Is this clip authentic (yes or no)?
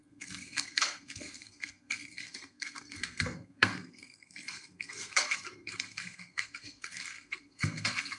no